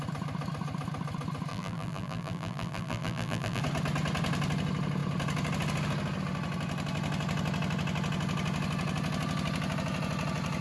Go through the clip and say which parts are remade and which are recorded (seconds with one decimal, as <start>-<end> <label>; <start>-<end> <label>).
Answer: 0.0-1.5 recorded; 1.5-3.6 remade; 3.6-10.6 recorded